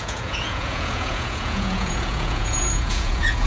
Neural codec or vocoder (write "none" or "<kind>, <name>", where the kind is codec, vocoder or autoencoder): vocoder, Vocos